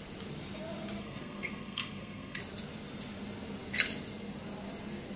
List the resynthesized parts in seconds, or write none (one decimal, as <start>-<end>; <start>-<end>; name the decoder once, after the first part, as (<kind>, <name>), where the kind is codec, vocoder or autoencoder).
1.0-2.4 (codec, SNAC)